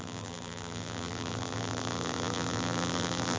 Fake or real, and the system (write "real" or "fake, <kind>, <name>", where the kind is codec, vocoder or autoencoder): fake, vocoder, BigVGAN v2